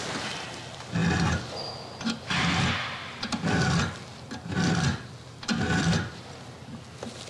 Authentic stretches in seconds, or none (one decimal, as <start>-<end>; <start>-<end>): 0.0-7.3